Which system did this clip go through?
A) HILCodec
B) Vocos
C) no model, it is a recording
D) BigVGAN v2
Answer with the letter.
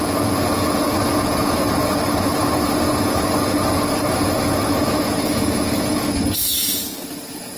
B